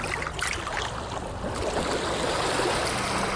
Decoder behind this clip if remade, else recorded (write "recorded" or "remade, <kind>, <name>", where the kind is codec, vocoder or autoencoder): recorded